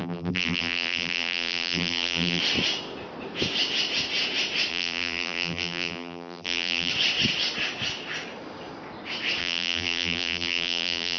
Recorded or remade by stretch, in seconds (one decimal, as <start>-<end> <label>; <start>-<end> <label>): 0.0-2.4 remade; 2.4-4.7 recorded; 4.7-6.9 remade; 6.9-9.4 recorded; 9.4-11.2 remade